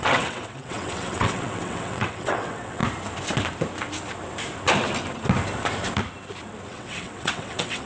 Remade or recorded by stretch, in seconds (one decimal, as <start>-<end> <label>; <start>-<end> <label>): 0.0-2.8 remade; 2.8-6.7 recorded; 6.7-7.9 remade